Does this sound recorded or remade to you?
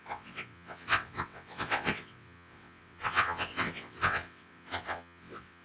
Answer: remade